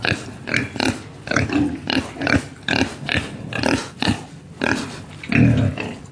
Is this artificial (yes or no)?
no